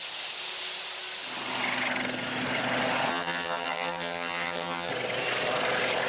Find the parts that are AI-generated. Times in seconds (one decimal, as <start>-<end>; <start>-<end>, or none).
3.1-4.9